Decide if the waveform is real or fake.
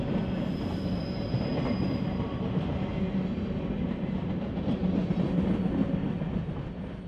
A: real